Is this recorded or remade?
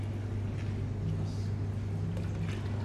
recorded